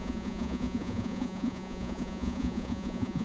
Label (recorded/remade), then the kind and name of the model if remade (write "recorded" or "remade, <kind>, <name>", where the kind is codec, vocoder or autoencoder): remade, vocoder, Vocos